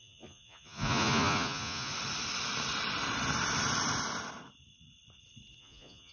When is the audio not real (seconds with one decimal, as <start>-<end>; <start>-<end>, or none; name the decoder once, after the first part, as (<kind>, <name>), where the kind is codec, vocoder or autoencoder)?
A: 0.0-1.9 (vocoder, Vocos); 5.6-6.1